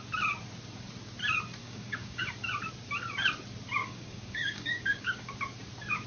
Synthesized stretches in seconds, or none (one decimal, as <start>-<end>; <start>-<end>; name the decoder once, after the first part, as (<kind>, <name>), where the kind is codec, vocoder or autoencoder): 1.6-2.3 (codec, DAC); 3.8-5.3

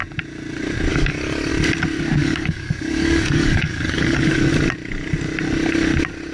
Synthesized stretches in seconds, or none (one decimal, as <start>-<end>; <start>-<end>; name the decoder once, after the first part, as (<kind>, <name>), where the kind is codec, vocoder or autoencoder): 0.9-1.5 (codec, DAC); 2.2-4.5

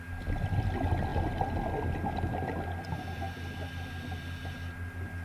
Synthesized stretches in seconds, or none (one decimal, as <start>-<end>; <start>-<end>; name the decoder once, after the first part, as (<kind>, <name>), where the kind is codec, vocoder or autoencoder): none

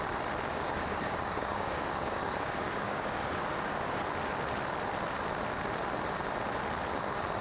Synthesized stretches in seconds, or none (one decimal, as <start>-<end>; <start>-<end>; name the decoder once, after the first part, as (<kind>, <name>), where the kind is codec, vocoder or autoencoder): 0.5-4.0 (codec, DAC)

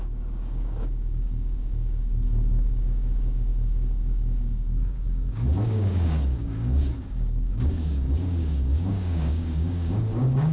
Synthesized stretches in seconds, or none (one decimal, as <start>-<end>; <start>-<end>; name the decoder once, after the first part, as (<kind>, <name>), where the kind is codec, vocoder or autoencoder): 0.0-10.5 (codec, DAC)

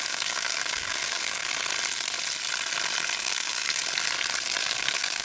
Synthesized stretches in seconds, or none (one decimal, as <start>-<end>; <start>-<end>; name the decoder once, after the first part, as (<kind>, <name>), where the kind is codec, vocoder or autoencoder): 0.0-1.4 (codec, DAC); 3.2-3.8; 4.6-5.2